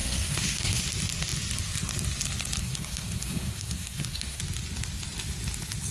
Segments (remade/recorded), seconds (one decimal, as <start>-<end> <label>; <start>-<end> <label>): 0.0-0.8 remade; 0.8-2.6 recorded; 2.6-4.4 remade; 4.4-5.9 recorded